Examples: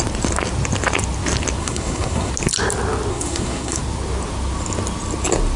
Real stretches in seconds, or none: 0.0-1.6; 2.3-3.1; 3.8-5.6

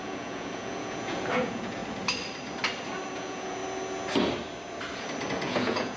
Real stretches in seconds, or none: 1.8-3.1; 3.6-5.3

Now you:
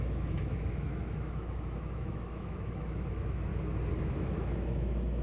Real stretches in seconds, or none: 3.5-4.0